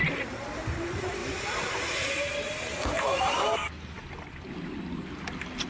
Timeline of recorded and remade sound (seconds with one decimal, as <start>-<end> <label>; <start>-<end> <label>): 0.0-5.7 recorded